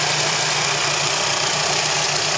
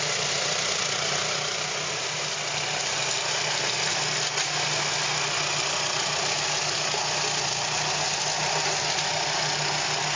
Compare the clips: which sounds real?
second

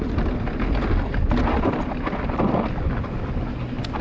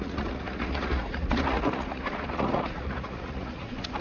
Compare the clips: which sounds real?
first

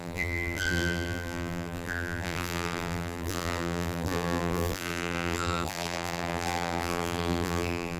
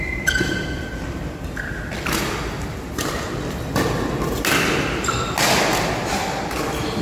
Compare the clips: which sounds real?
second